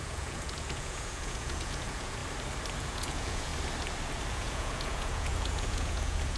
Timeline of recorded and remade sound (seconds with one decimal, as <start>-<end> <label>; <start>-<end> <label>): 0.0-2.2 remade; 2.2-2.8 recorded; 2.8-3.5 remade; 3.5-4.3 recorded; 4.3-6.4 remade